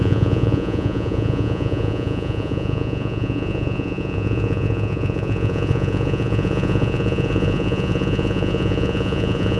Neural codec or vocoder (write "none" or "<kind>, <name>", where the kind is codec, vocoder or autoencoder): vocoder, Vocos